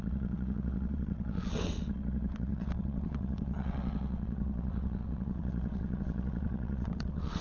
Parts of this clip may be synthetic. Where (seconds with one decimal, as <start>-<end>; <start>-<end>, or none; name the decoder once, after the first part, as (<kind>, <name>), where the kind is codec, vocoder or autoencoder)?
0.0-7.4 (vocoder, WaveNeXt)